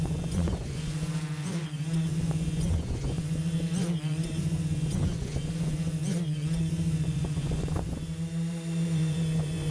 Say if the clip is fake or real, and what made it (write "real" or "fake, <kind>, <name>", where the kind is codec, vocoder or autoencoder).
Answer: fake, vocoder, Vocos